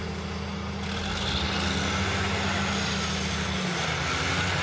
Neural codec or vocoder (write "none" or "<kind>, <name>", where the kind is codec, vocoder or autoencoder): none